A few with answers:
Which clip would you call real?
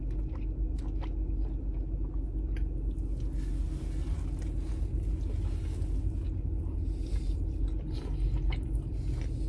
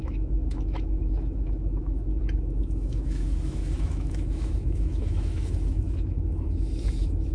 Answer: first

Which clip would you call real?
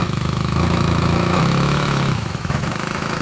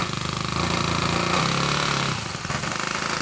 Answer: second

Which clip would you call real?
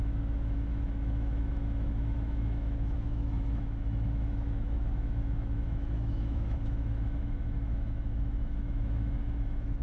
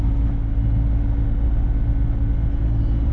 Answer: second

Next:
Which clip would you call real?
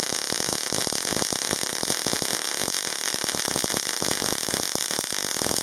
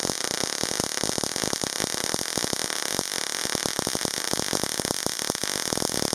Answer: second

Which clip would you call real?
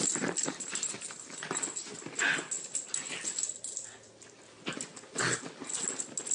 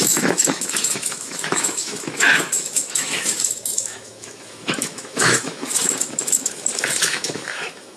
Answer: first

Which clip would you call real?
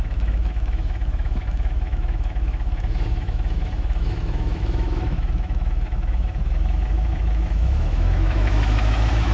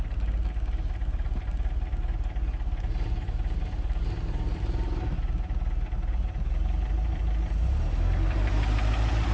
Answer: second